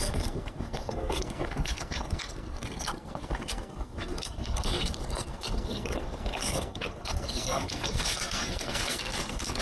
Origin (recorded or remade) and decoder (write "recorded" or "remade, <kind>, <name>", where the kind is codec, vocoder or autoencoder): remade, codec, SNAC